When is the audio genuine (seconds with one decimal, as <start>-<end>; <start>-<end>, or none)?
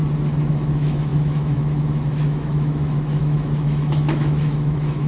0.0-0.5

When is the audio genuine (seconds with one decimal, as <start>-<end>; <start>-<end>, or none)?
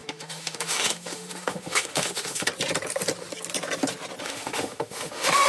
2.5-4.2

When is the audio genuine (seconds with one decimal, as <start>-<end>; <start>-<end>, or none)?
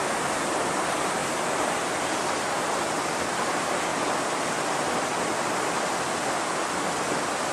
0.0-7.5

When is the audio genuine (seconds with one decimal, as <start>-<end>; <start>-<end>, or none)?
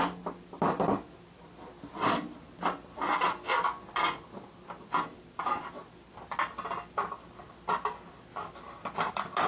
0.0-9.5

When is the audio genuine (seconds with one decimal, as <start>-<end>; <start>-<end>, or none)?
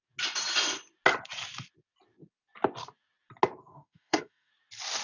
0.0-3.7; 4.5-5.0